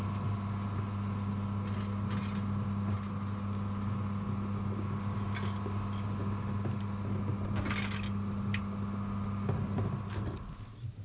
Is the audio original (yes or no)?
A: yes